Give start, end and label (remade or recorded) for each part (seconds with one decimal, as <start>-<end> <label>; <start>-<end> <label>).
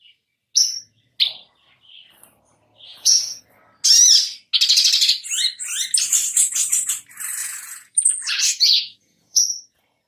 0.0-2.9 recorded; 2.9-3.4 remade; 3.4-7.4 recorded; 7.4-9.4 remade; 9.4-10.1 recorded